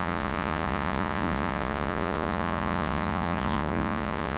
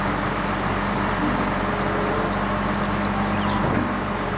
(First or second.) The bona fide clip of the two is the second